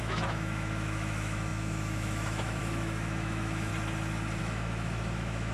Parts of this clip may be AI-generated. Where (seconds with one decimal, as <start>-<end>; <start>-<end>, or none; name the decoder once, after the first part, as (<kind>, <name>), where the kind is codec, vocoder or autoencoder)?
0.0-3.7 (autoencoder, DAC-VAE); 4.4-5.5